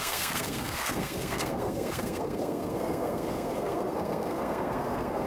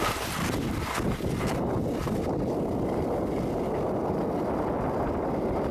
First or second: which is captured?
second